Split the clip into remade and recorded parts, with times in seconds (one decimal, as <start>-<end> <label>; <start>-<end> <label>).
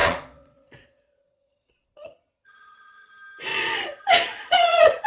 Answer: 0.0-3.1 remade; 3.1-3.5 recorded; 3.5-5.1 remade